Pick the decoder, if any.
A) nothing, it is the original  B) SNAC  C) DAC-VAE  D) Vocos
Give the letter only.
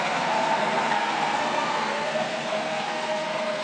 B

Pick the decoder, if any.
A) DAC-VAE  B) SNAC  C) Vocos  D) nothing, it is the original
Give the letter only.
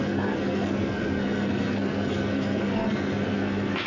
B